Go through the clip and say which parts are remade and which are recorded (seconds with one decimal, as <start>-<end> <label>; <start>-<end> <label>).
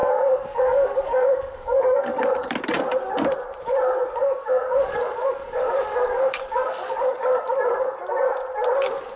0.0-2.5 remade; 2.5-4.2 recorded; 4.2-8.0 remade; 8.0-9.2 recorded